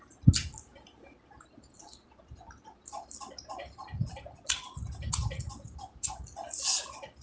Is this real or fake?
real